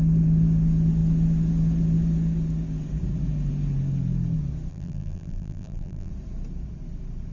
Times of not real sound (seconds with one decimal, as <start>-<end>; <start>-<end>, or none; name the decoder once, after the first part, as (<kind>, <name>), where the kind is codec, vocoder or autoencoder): 4.7-6.1 (vocoder, BigVGAN v2)